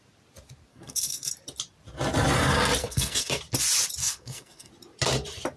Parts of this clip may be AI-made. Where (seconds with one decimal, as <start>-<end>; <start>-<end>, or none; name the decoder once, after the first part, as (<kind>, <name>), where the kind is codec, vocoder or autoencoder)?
0.7-1.3 (codec, SNAC); 2.8-3.4; 4.0-4.7